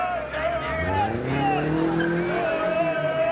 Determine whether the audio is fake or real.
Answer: real